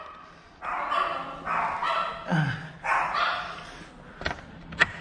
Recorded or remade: recorded